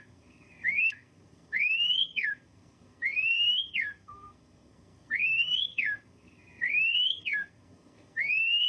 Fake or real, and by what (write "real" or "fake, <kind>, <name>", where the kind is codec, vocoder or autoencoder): fake, codec, SNAC